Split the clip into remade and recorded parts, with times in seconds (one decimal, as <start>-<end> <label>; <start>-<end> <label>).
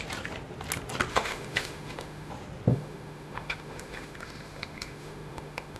0.0-1.1 recorded; 1.1-2.3 remade; 2.3-2.7 recorded; 2.7-5.8 remade